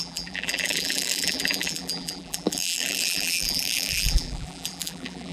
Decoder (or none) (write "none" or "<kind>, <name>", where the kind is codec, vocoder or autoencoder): vocoder, BigVGAN v2